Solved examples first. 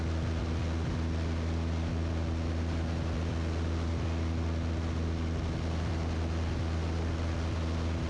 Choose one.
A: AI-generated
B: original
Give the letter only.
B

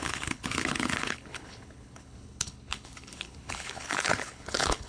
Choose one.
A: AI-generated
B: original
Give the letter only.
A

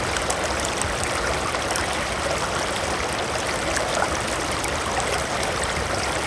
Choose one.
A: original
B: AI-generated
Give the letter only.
B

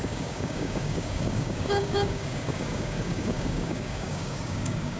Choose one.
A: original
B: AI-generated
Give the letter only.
B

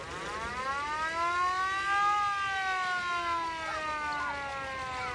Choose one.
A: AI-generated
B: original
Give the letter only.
B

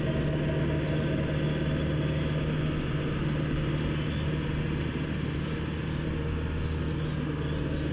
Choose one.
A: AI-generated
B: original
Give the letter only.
B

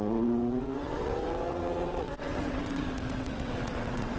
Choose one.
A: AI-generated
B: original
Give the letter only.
A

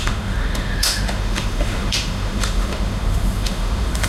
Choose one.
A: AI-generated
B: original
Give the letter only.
A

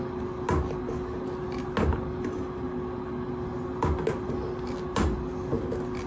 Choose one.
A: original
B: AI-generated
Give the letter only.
A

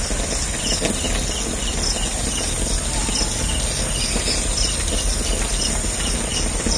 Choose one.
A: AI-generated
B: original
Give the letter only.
B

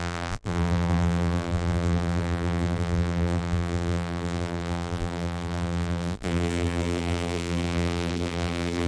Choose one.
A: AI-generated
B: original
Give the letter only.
A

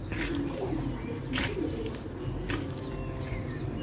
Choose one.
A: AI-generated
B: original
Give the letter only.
B